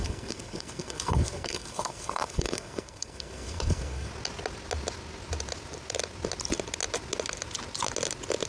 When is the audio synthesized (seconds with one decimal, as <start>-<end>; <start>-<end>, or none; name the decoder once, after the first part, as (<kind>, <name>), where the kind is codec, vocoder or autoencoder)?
0.0-4.1 (codec, SNAC)

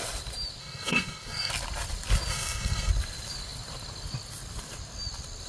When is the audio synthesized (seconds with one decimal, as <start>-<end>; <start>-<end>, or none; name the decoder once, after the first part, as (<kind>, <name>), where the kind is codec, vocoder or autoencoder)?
0.6-1.5 (codec, SNAC); 2.3-2.9